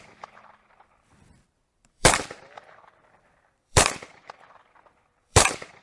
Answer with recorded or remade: remade